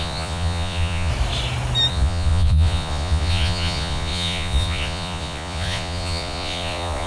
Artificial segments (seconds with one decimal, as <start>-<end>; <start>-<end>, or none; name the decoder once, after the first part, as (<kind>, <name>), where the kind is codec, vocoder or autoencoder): 0.0-1.1 (vocoder, Vocos); 1.9-7.1